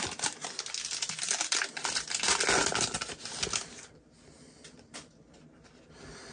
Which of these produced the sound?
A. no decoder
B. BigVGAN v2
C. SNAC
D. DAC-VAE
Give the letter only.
A